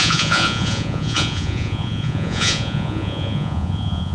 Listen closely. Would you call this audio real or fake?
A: fake